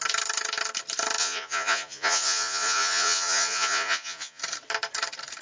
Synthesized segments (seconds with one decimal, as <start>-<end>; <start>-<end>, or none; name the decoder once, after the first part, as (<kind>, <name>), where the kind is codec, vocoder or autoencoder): 1.2-4.4 (vocoder, Vocos)